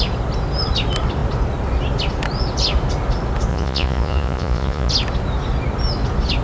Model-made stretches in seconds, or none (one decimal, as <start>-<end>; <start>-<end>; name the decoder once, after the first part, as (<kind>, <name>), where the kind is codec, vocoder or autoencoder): 3.5-4.9 (vocoder, Vocos)